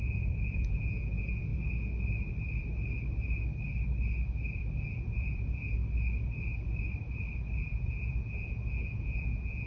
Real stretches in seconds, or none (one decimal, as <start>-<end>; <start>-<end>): 1.5-4.9; 5.8-7.6